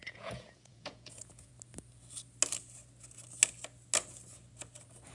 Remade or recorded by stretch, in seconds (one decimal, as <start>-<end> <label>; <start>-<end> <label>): 0.0-1.5 remade; 1.5-5.1 recorded